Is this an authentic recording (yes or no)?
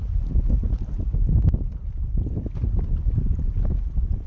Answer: yes